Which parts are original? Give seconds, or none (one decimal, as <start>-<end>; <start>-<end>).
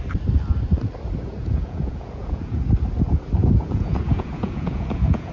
0.0-1.4; 2.6-3.4